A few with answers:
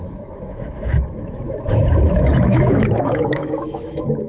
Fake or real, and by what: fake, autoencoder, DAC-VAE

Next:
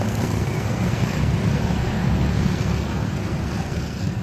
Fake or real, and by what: fake, codec, SNAC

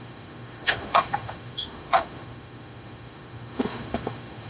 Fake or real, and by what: fake, autoencoder, DAC-VAE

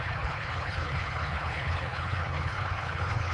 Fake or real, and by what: fake, codec, HILCodec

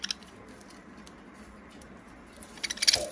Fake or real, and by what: real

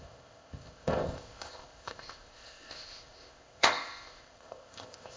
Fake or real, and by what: fake, codec, ZipCodec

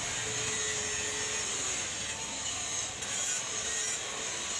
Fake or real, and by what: real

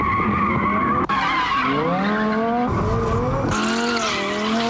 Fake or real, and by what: real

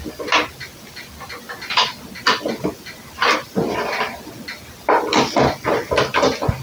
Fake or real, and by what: real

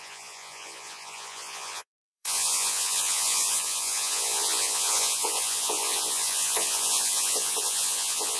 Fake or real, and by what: fake, vocoder, Vocos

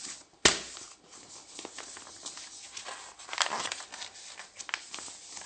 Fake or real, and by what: real